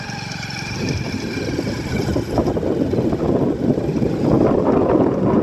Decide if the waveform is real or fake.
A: fake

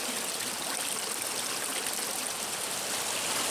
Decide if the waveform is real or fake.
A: real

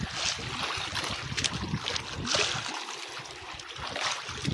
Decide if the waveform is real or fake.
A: real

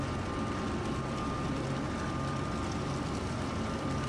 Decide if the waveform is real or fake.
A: fake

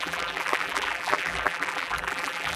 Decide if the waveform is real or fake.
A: fake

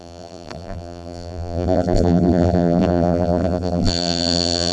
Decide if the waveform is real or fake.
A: fake